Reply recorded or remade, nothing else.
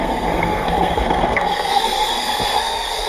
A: remade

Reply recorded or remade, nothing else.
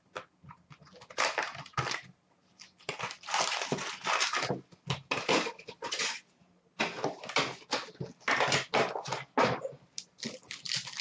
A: recorded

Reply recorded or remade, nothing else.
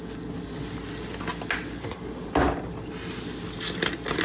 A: recorded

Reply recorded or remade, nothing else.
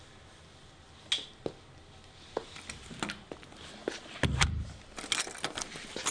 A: recorded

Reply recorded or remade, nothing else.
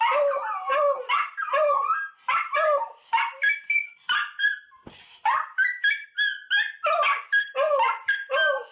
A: recorded